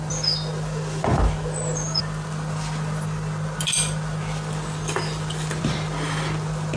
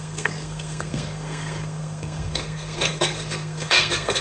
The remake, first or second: second